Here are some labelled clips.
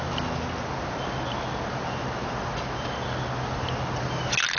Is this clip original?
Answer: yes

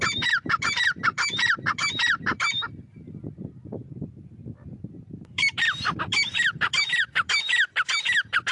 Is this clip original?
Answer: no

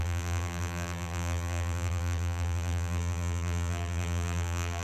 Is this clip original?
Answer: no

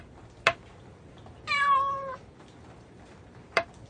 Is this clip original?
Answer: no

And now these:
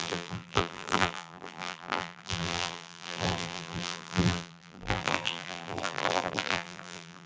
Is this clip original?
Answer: no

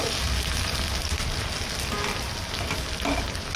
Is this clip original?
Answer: yes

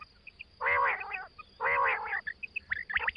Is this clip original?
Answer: yes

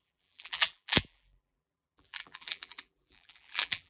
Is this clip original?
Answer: no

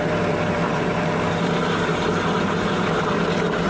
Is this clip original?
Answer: no